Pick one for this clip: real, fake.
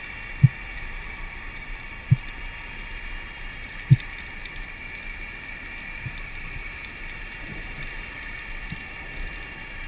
fake